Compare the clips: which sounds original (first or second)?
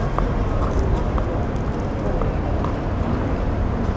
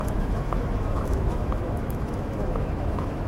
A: first